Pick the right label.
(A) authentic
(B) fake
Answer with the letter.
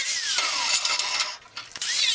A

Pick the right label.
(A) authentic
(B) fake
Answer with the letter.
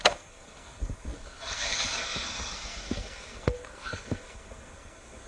B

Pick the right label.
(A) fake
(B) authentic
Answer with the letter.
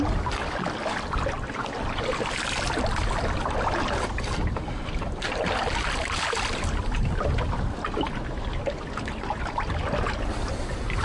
B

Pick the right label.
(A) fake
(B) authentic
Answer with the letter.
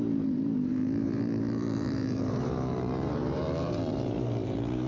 A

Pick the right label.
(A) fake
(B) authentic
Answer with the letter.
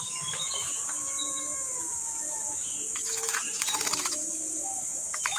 A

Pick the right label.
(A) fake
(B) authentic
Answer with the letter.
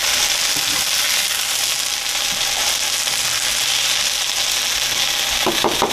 B